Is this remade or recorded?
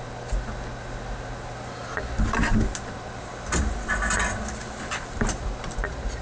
recorded